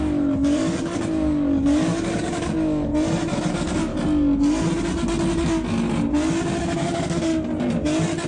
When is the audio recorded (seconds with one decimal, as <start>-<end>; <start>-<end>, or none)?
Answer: 2.9-3.5; 3.9-6.6; 7.3-8.3